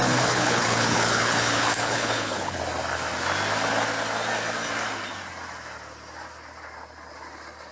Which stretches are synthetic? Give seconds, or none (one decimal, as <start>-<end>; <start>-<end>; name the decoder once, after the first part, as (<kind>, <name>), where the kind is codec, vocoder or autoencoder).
0.0-2.6 (codec, HILCodec)